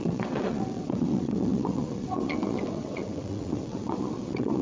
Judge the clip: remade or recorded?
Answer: remade